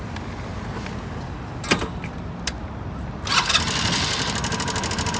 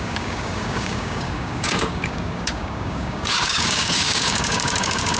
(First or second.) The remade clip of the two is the second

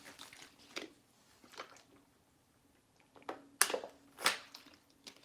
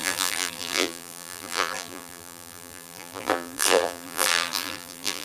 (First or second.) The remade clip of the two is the second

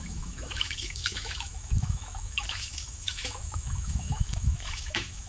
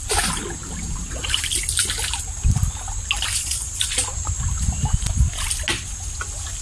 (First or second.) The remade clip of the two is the first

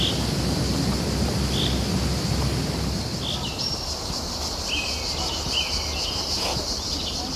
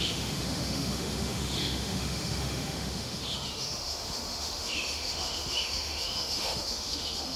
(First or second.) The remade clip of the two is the second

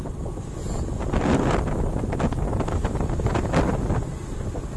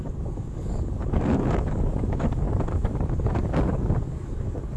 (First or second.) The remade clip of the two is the second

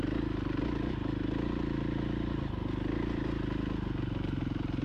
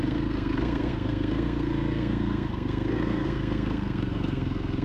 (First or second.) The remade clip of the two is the second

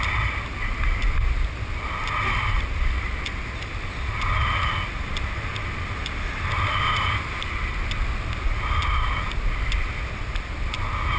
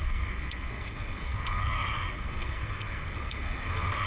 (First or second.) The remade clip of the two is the second